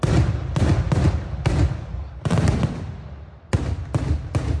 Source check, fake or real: real